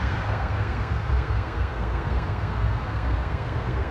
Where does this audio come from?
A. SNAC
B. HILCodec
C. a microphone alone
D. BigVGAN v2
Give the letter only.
A